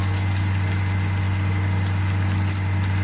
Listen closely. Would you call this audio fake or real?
real